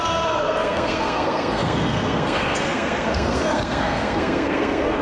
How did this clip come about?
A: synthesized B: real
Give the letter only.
A